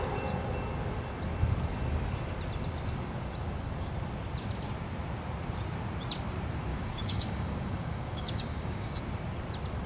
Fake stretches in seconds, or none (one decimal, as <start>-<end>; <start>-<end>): 6.7-9.0